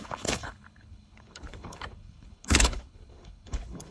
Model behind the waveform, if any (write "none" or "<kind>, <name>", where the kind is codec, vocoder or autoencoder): codec, HILCodec